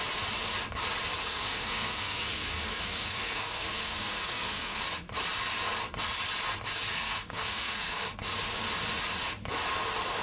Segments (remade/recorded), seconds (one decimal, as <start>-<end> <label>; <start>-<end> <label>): 0.0-1.2 recorded; 1.2-4.8 remade; 4.8-6.9 recorded; 6.9-8.1 remade; 8.1-10.2 recorded